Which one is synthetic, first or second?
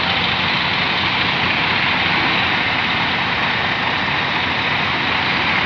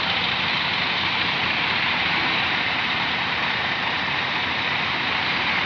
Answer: second